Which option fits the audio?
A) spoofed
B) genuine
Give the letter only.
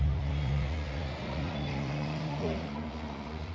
A